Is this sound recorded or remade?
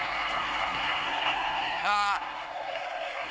remade